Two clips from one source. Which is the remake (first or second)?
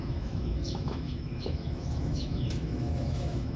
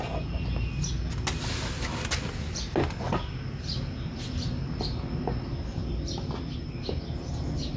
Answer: first